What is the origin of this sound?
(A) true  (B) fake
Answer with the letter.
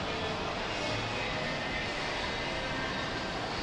A